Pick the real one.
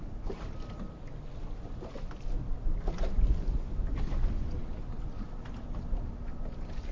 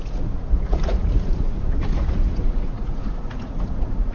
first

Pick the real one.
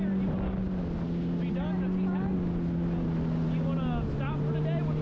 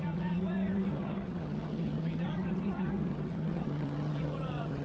first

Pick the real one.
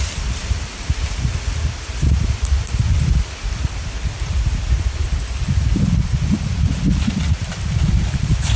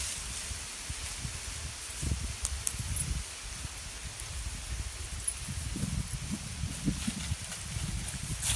second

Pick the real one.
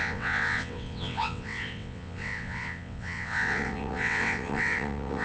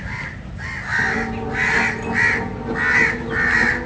second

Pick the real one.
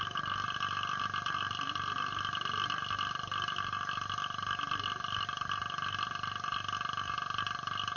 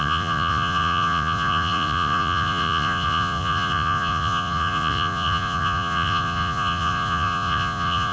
first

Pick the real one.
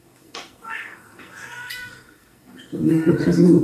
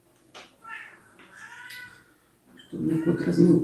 second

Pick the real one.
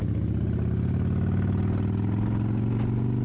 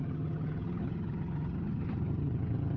first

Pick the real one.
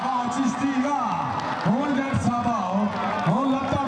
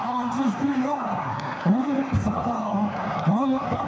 first